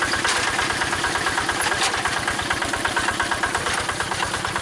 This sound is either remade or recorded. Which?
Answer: recorded